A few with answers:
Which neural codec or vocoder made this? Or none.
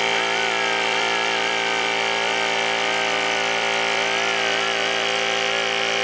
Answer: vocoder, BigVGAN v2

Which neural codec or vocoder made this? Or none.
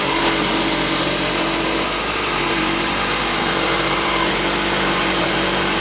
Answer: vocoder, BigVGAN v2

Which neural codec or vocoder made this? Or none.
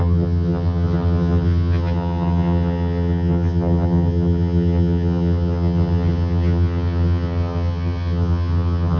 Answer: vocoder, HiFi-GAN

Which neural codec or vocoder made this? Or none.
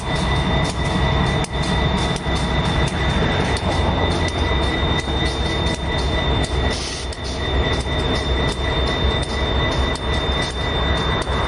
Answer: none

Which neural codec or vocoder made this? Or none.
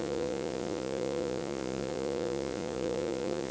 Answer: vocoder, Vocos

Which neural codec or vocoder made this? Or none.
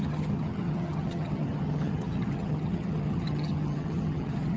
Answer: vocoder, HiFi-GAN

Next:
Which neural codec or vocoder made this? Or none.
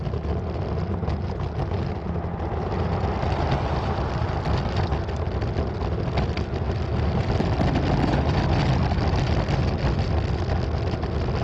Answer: none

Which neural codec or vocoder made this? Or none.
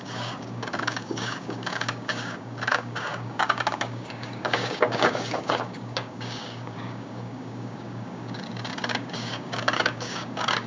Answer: codec, DAC